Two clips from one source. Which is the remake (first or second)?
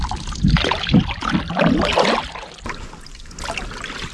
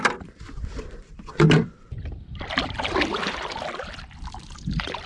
second